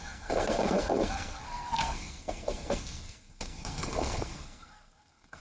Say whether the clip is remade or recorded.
remade